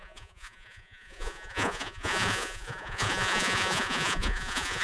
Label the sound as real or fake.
fake